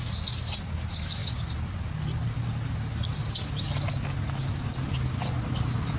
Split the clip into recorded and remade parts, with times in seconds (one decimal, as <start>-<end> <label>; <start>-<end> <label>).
0.0-6.0 recorded